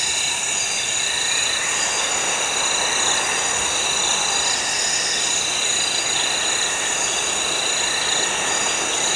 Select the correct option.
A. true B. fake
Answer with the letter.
A